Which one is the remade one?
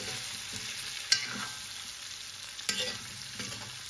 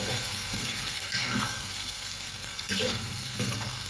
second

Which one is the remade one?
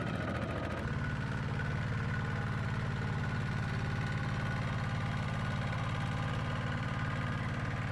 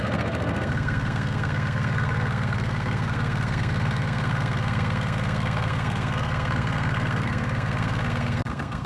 second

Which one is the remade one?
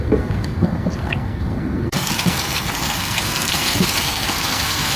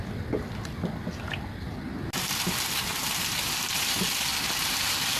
first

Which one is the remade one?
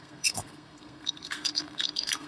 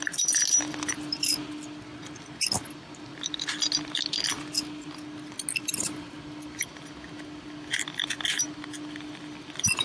first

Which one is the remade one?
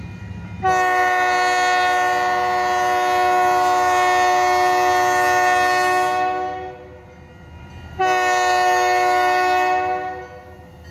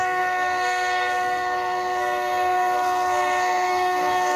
second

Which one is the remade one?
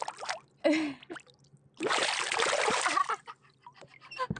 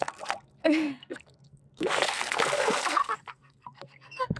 second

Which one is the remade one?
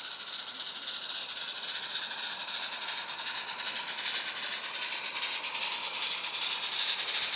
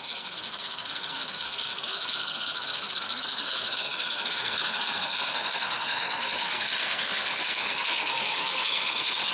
second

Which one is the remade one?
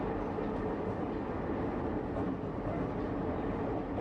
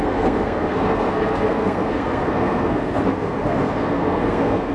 second